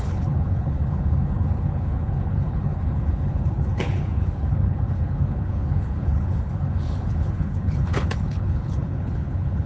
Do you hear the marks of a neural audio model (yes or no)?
yes